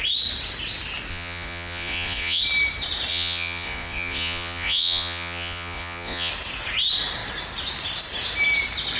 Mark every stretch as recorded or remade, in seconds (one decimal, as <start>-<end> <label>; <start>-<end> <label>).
0.0-1.1 recorded; 1.1-2.4 remade; 2.4-3.1 recorded; 3.1-6.3 remade; 6.3-9.0 recorded